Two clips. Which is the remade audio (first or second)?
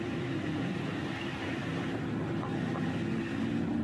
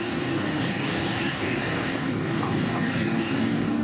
second